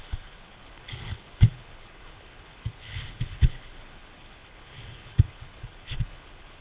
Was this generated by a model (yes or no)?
yes